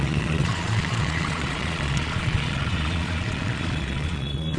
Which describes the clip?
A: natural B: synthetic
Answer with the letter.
B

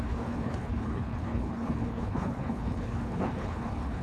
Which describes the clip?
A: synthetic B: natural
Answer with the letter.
A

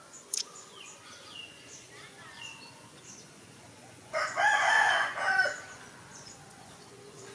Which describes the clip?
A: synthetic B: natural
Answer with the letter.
A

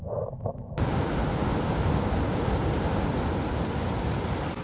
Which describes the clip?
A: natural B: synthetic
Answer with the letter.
A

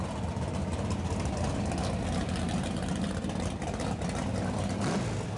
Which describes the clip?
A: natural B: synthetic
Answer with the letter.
A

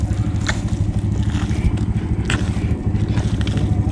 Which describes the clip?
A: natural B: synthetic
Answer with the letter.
A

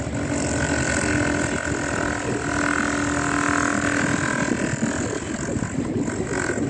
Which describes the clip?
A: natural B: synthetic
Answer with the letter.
A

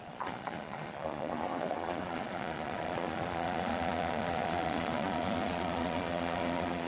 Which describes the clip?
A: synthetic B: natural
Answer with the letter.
A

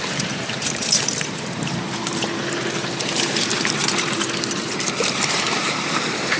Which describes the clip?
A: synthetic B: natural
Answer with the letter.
A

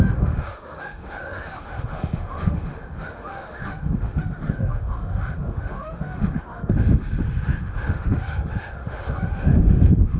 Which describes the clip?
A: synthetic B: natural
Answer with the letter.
A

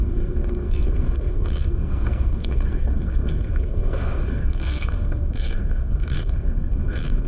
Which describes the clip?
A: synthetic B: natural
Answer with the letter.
A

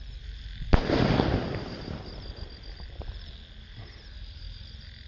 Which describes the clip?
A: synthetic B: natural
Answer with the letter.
B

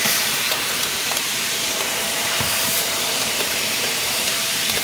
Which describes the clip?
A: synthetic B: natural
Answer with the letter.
A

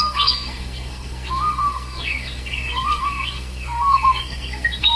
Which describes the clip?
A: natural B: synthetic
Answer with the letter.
B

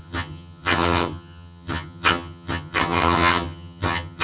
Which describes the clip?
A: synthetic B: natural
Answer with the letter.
A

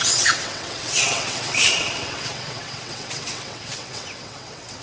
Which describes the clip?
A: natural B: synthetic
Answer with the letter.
B